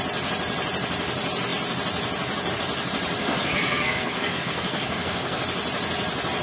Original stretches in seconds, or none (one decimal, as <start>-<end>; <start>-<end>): 0.0-3.2; 5.4-6.4